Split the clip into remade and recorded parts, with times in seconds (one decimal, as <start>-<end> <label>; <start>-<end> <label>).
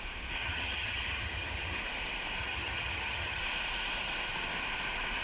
0.0-0.4 recorded; 0.4-1.8 remade; 1.8-2.4 recorded; 2.4-3.4 remade; 3.4-5.2 recorded